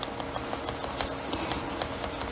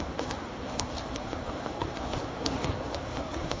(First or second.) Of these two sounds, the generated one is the second